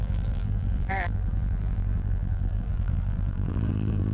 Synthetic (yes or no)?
yes